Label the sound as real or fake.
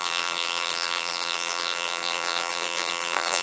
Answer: fake